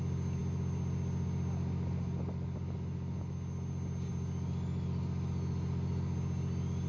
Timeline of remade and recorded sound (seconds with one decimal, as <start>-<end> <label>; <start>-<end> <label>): 0.0-6.9 recorded